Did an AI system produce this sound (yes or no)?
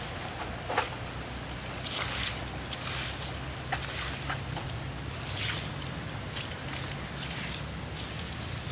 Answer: no